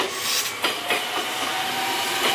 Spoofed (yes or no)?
no